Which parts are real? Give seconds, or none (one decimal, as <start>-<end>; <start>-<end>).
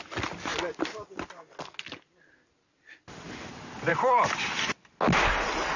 0.0-5.8